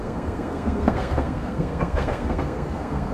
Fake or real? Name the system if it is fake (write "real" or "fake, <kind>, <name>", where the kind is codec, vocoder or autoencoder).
fake, codec, SNAC